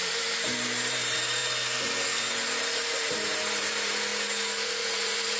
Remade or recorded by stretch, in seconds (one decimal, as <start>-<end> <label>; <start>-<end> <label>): 0.0-1.4 remade; 1.4-2.6 recorded; 2.6-4.1 remade; 4.1-4.8 recorded; 4.8-5.4 remade